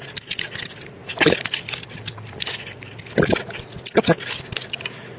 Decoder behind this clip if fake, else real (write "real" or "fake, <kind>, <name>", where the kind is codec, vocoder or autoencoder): real